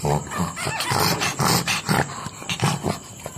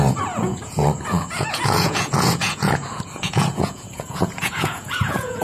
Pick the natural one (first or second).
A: first